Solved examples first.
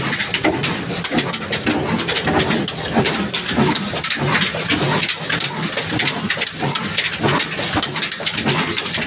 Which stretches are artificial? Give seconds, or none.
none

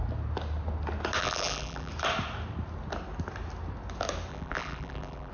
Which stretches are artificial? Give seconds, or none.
1.2-1.9 (vocoder, BigVGAN v2); 4.3-5.3